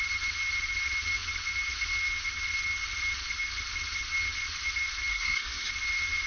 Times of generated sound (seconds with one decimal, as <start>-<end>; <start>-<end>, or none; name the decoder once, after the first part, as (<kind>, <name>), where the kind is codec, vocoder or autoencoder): 5.1-5.7 (codec, SNAC)